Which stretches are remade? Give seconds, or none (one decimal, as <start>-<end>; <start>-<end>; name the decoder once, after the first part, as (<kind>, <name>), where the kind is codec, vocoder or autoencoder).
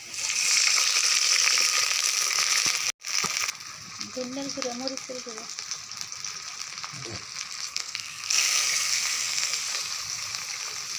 7.7-9.6 (codec, SNAC)